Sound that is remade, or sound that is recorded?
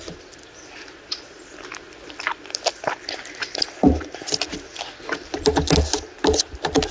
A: recorded